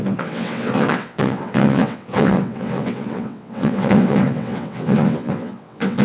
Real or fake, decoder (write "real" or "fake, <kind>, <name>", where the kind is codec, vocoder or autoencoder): fake, vocoder, WaveNeXt